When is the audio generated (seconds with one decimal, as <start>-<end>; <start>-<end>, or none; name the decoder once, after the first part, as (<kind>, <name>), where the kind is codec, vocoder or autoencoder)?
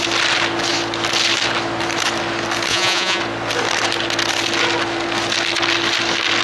2.7-3.2 (vocoder, Vocos)